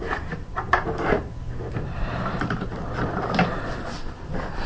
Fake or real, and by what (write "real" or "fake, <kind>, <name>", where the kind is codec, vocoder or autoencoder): fake, vocoder, BigVGAN v2